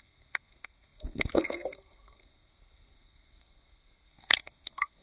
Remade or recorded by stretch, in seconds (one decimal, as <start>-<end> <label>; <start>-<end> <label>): 0.0-5.0 remade